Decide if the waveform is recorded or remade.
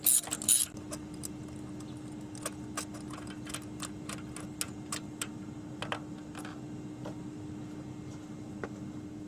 recorded